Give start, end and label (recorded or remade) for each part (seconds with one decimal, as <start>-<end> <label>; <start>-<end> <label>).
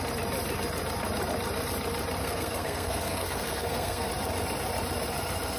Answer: 0.0-2.2 recorded; 2.2-4.1 remade; 4.1-5.6 recorded